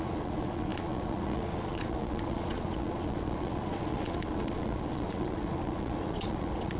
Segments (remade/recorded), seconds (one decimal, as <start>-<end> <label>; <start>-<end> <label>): 0.0-6.8 remade